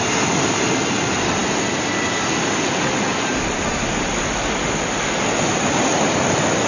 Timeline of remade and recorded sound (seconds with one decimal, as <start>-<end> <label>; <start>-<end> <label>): 0.0-6.7 recorded